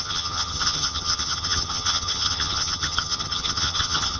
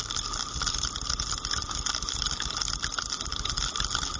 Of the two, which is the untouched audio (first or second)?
second